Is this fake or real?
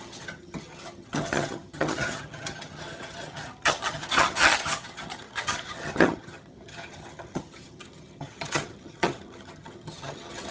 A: fake